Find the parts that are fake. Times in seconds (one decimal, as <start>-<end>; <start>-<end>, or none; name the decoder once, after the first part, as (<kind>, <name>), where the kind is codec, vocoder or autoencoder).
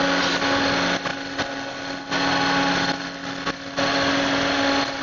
none